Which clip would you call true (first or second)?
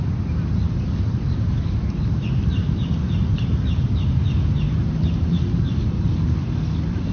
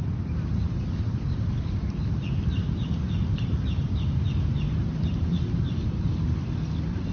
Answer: first